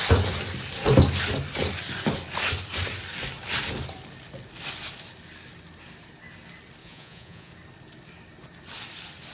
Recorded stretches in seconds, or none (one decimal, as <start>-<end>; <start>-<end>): 0.0-6.8; 7.5-9.3